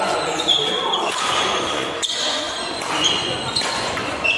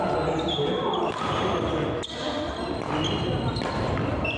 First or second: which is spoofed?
first